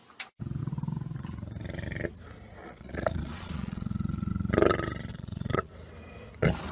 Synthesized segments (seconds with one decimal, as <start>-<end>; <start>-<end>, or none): 2.6-4.3; 5.1-5.7